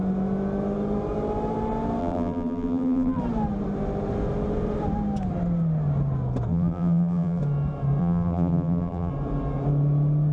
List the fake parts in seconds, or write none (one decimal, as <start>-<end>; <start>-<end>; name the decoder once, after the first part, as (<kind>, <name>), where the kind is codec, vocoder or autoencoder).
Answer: 2.0-3.2 (vocoder, BigVGAN v2); 6.5-7.4; 8.0-9.1